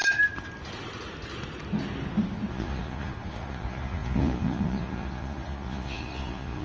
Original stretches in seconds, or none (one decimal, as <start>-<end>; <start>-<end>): 0.0-2.5